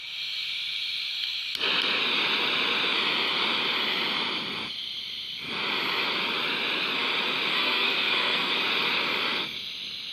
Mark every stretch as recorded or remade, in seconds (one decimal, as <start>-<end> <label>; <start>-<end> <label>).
0.0-7.5 recorded; 7.5-8.5 remade; 8.5-10.1 recorded